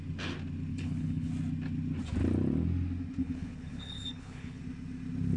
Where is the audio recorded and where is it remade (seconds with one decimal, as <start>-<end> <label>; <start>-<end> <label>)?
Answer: 0.0-0.7 recorded; 0.7-1.3 remade; 1.3-3.2 recorded; 3.2-4.6 remade; 4.6-5.4 recorded